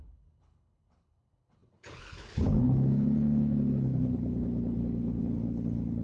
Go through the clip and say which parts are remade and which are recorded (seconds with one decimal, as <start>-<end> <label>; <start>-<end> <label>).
0.0-6.0 remade